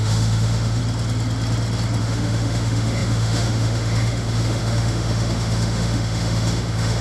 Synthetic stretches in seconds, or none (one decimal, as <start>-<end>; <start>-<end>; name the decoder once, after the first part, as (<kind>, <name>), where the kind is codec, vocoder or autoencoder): 0.0-0.8 (autoencoder, DAC-VAE); 2.0-7.0